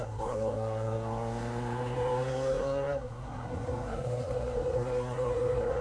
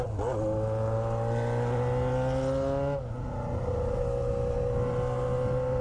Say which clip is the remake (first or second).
first